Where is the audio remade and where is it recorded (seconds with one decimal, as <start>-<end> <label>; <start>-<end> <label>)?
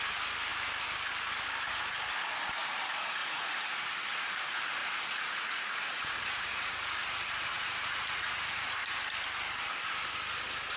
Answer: 0.0-3.2 recorded; 3.2-4.2 remade; 4.2-4.8 recorded; 4.8-8.9 remade; 8.9-10.8 recorded